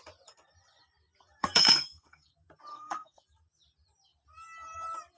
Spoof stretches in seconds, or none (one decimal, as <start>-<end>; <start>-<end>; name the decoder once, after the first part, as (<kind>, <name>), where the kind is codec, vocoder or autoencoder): 1.4-2.3 (codec, SNAC); 2.7-3.2